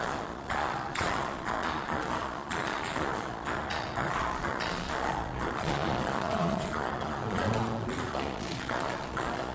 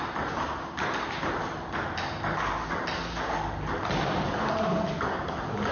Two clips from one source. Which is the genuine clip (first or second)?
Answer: second